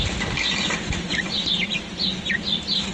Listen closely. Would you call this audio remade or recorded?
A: recorded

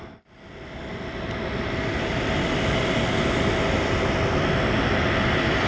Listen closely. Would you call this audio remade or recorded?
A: recorded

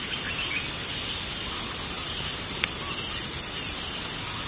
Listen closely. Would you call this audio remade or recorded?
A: recorded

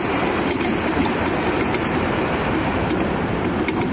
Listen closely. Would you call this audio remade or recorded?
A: remade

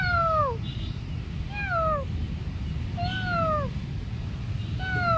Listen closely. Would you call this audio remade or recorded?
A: recorded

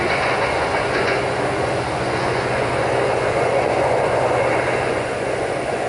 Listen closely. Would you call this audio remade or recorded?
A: remade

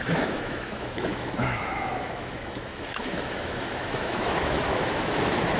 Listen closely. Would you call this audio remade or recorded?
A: remade